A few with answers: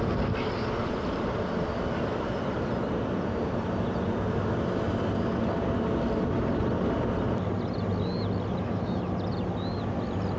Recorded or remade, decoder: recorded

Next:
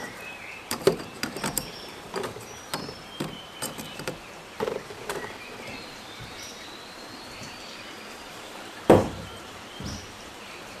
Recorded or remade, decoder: remade, vocoder, BigVGAN v2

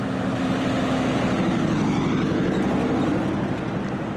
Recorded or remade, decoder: recorded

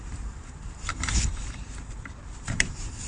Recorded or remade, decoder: remade, vocoder, BigVGAN v2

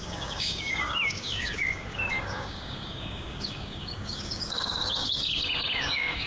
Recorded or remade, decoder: remade, codec, DAC